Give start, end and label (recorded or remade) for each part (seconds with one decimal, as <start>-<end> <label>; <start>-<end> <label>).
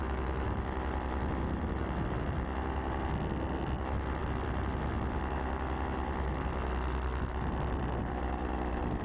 0.0-9.0 recorded